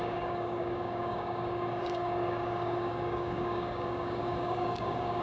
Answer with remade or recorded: remade